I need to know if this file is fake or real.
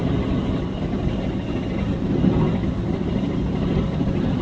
real